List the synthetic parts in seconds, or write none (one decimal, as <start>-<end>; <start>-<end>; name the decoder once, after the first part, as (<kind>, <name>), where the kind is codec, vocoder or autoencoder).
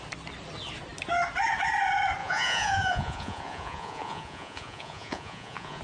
2.2-5.8 (vocoder, Vocos)